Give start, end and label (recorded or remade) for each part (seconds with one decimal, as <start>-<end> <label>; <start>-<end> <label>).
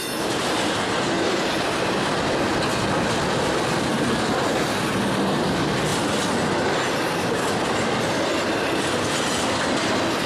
0.0-10.3 recorded